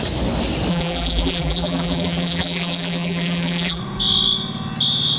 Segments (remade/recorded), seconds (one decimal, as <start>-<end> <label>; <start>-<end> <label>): 0.0-0.7 recorded; 0.7-3.8 remade; 3.8-5.2 recorded